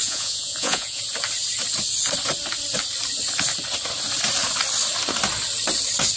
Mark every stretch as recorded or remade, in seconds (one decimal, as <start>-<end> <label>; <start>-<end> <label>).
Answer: 0.0-1.0 remade; 1.0-6.2 recorded